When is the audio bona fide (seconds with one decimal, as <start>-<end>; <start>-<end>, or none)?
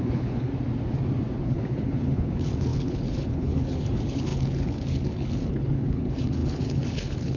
0.5-1.4